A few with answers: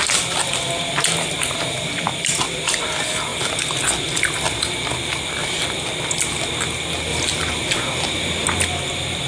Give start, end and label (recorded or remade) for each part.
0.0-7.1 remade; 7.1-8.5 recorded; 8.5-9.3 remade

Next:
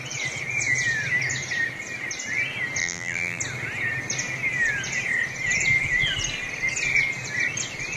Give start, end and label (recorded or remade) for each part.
0.0-2.8 recorded; 2.8-3.4 remade; 3.4-8.0 recorded

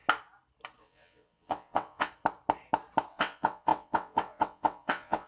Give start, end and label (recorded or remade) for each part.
0.0-0.8 recorded; 0.8-2.1 remade; 2.1-3.1 recorded; 3.1-5.3 remade

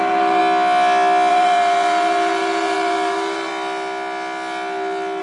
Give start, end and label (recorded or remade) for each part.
0.0-0.4 remade; 0.4-1.3 recorded; 1.3-3.5 remade; 3.5-5.2 recorded